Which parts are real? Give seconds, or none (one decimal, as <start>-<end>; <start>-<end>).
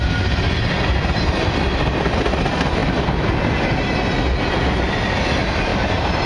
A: 0.0-6.3